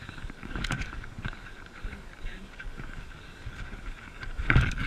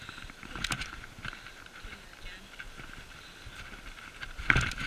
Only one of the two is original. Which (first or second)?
second